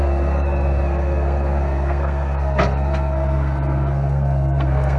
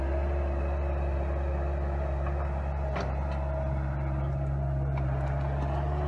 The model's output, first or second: first